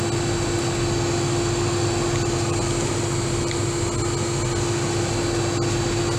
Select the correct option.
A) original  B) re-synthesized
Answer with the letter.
A